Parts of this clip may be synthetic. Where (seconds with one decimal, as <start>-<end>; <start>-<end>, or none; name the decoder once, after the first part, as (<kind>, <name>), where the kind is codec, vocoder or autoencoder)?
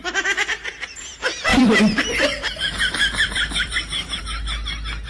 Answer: 1.5-4.2 (vocoder, BigVGAN v2)